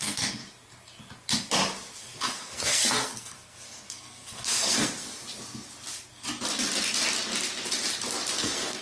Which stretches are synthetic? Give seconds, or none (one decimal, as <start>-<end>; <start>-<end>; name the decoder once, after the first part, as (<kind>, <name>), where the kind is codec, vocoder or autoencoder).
0.0-0.4 (codec, SNAC); 2.0-5.2; 8.4-8.8

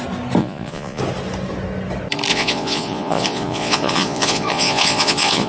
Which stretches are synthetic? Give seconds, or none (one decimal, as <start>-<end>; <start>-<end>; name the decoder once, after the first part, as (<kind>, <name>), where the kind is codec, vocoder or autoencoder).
0.4-1.0 (vocoder, Vocos); 2.3-5.5

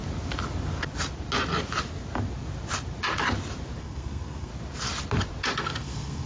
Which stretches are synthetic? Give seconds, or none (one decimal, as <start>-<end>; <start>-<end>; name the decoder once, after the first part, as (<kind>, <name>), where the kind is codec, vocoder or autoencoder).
3.8-4.5 (codec, SNAC); 5.6-6.3

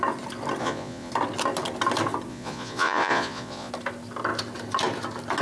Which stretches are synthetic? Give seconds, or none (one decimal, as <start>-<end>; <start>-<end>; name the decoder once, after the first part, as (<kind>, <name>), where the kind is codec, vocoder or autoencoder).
0.6-1.1 (vocoder, Vocos); 2.3-3.7